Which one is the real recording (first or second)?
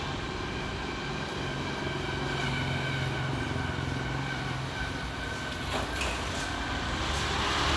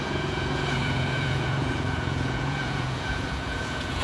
first